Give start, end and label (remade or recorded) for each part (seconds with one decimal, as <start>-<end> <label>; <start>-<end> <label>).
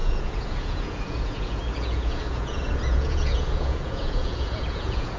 0.0-5.2 remade